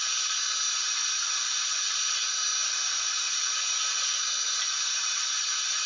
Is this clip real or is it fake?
real